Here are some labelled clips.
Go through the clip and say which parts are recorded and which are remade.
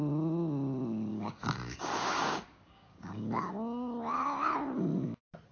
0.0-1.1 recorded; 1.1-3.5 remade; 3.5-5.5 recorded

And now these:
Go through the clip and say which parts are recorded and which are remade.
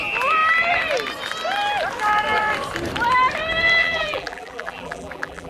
0.0-3.8 recorded; 3.8-5.5 remade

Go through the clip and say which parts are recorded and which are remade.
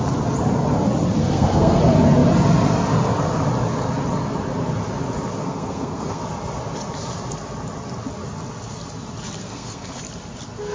0.0-1.2 recorded; 1.2-1.8 remade; 1.8-5.4 recorded; 5.4-6.2 remade; 6.2-9.4 recorded; 9.4-10.0 remade; 10.0-10.7 recorded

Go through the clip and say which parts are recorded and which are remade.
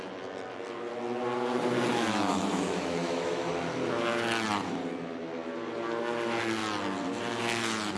0.0-1.9 recorded; 1.9-3.5 remade; 3.5-8.0 recorded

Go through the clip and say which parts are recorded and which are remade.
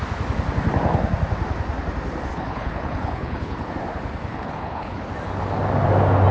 0.0-2.3 recorded; 2.3-3.7 remade; 3.7-4.3 recorded; 4.3-5.1 remade; 5.1-6.3 recorded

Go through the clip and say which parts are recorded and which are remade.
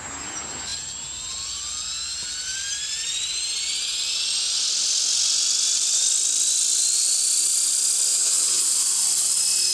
0.0-8.1 recorded; 8.1-8.6 remade; 8.6-9.7 recorded